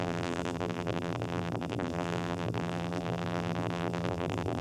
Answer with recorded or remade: remade